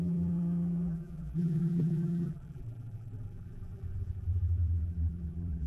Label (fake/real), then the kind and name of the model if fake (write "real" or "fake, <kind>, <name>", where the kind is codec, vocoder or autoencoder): fake, vocoder, BigVGAN v2